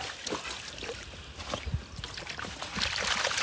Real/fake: real